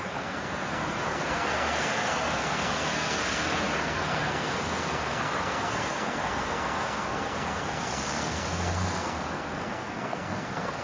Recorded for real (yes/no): no